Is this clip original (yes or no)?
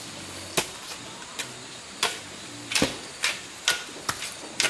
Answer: yes